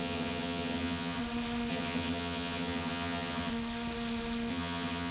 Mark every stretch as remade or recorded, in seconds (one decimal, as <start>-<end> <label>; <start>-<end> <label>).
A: 0.0-1.2 remade; 1.2-1.7 recorded; 1.7-3.5 remade; 3.5-4.5 recorded; 4.5-5.1 remade